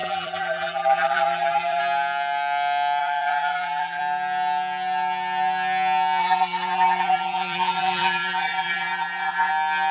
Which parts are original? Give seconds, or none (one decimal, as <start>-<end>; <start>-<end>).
1.8-3.0; 4.0-6.2; 9.5-9.9